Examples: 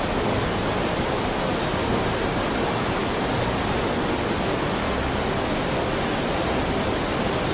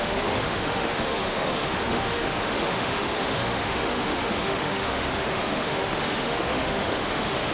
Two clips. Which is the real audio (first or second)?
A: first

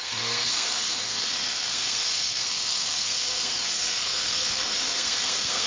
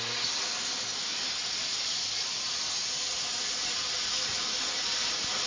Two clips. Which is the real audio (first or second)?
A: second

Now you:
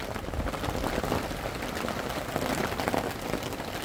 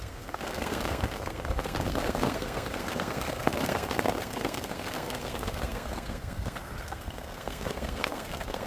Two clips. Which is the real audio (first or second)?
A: first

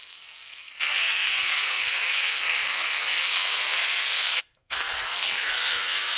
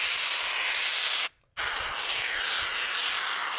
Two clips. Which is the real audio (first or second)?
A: second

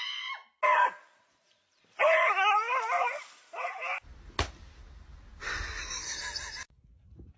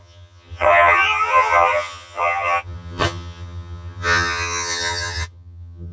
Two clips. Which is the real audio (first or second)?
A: first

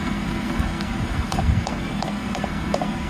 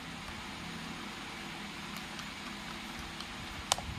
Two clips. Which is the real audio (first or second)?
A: second